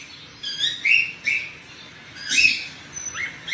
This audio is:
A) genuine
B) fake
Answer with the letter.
A